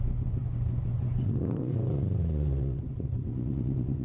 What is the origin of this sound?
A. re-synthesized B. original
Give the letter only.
A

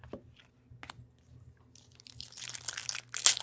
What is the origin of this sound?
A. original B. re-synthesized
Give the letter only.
A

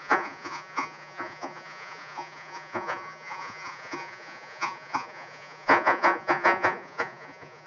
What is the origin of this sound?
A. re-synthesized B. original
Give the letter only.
A